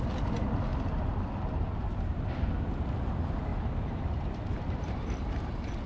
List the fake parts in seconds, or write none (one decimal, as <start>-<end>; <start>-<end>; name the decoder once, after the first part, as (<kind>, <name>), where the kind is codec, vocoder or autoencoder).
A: 0.0-0.7 (vocoder, BigVGAN v2); 3.0-5.9